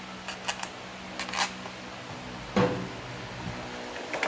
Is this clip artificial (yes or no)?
no